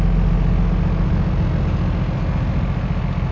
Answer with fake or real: real